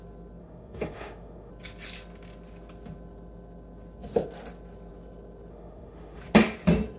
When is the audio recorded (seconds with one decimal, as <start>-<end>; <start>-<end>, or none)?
0.0-0.4; 1.5-5.5; 6.2-7.0